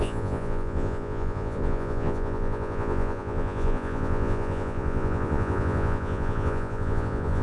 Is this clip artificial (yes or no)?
yes